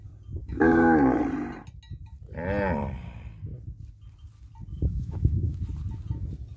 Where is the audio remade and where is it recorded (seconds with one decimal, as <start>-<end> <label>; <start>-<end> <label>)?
0.0-0.4 recorded; 0.4-1.2 remade; 1.2-4.7 recorded; 4.7-5.6 remade; 5.6-6.6 recorded